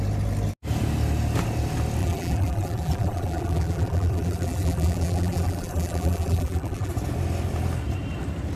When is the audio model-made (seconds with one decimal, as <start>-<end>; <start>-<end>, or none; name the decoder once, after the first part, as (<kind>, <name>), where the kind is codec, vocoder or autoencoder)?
2.0-6.9 (vocoder, BigVGAN v2)